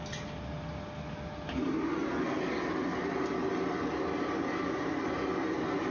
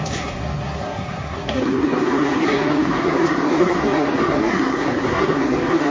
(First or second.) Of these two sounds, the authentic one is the first